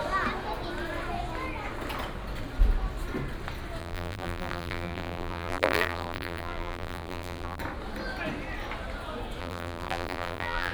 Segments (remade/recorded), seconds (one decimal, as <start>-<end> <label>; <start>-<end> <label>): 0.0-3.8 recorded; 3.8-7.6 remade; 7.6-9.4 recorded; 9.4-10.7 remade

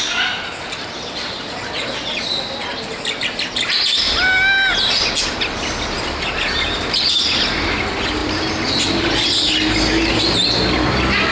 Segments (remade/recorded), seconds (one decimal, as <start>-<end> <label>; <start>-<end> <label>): 0.0-11.3 recorded

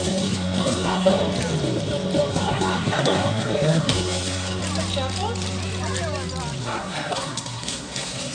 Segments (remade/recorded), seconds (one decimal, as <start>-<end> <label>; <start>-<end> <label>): 0.0-1.2 remade; 1.2-2.3 recorded; 2.3-4.6 remade; 4.6-6.6 recorded; 6.6-8.3 remade

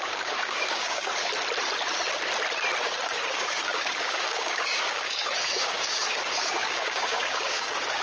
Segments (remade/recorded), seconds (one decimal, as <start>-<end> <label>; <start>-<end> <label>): 0.0-1.1 remade; 1.1-2.8 recorded; 2.8-8.0 remade

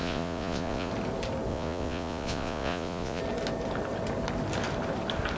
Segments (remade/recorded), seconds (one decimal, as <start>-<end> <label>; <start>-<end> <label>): 0.0-0.9 remade; 0.9-1.5 recorded; 1.5-3.2 remade; 3.2-5.4 recorded

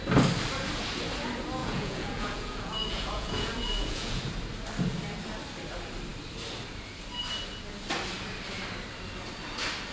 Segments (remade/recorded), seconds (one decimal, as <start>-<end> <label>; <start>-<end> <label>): 0.0-1.6 recorded; 1.6-4.2 remade; 4.2-9.9 recorded

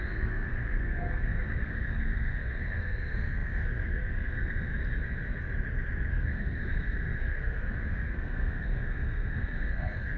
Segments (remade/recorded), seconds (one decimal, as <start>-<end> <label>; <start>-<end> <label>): 0.0-4.7 remade; 4.7-6.1 recorded; 6.1-10.2 remade